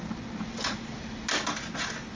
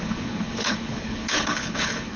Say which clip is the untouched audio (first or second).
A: first